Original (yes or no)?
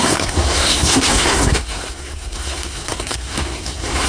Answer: no